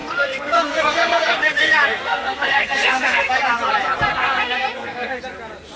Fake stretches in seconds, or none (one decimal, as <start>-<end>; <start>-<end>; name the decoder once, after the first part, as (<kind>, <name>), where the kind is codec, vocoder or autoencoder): 0.0-3.4 (codec, SNAC); 4.1-5.2